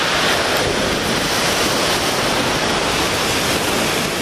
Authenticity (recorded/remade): recorded